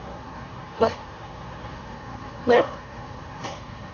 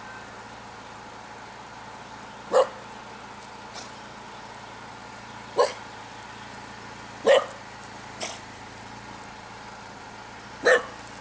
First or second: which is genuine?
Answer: second